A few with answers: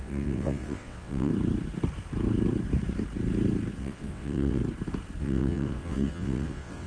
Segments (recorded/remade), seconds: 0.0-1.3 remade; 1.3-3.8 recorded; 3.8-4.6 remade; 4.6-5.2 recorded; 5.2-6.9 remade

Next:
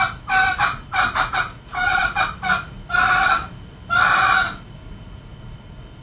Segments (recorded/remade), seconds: 0.0-6.0 recorded

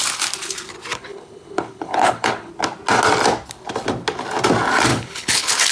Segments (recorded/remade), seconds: 0.0-0.9 recorded; 0.9-2.5 remade; 2.5-4.9 recorded; 4.9-5.7 remade

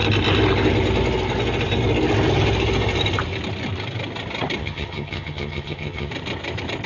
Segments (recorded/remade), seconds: 0.0-4.6 recorded; 4.6-6.1 remade; 6.1-6.9 recorded

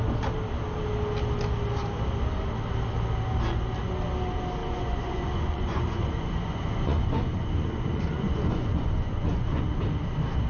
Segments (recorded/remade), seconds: 0.0-4.6 recorded; 4.6-9.6 remade; 9.6-10.5 recorded